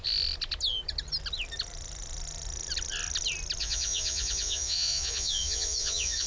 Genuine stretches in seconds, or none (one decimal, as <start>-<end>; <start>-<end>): 0.0-3.6